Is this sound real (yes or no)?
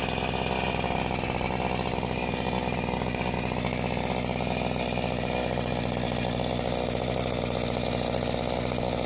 yes